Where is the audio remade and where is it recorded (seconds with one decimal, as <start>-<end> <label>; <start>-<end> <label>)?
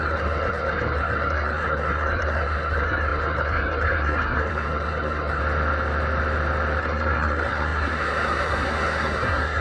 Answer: 0.0-5.4 remade; 5.4-6.8 recorded; 6.8-9.6 remade